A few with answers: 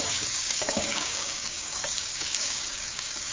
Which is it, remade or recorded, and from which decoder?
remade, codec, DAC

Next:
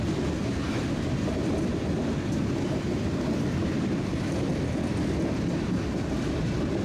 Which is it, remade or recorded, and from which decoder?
recorded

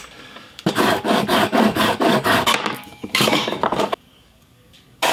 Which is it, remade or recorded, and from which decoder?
remade, codec, DAC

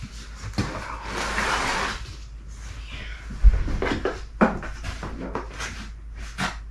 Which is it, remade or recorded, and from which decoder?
recorded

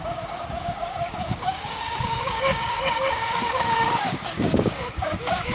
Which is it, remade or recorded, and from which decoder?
remade, codec, DAC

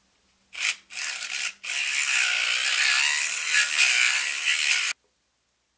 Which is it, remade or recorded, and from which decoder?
recorded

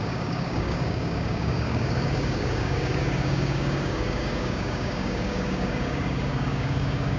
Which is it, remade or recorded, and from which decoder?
remade, codec, DAC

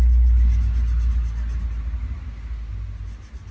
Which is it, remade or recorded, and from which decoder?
recorded